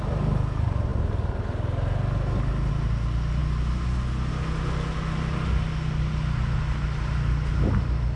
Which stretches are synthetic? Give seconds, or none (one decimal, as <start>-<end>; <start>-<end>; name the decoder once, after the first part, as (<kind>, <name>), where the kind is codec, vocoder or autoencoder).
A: none